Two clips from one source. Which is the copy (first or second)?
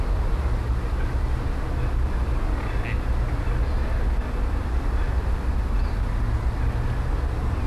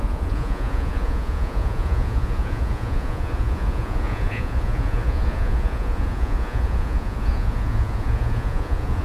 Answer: second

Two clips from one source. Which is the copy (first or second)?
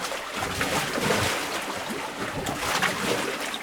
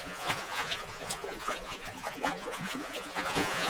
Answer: second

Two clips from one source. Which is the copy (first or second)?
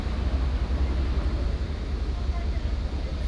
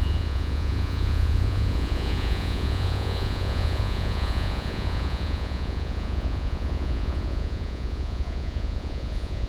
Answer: second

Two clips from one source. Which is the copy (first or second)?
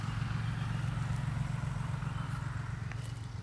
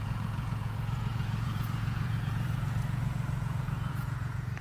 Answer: second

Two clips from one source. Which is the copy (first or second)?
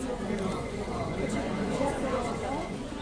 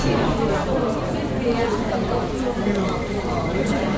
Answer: first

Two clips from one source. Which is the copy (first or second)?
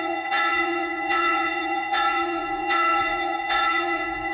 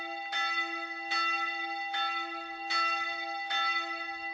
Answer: first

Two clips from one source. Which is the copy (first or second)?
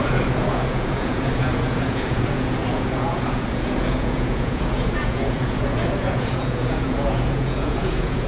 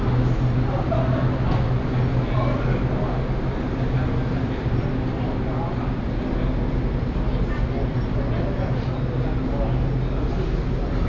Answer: first